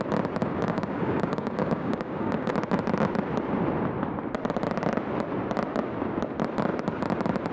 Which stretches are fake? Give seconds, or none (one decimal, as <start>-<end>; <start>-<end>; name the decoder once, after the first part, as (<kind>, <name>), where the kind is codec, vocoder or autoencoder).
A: 0.4-2.5 (codec, DAC)